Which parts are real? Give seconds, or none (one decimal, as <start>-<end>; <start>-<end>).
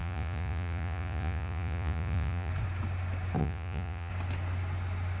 2.5-3.4; 4.1-5.2